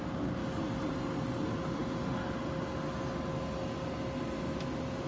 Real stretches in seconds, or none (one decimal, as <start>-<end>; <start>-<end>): 0.0-5.1